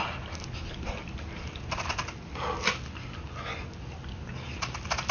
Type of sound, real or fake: real